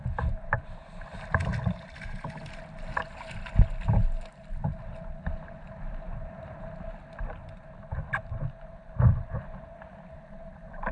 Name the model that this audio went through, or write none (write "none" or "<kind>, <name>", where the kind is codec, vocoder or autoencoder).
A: none